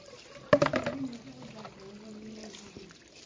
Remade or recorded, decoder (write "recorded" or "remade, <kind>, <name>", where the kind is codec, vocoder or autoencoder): recorded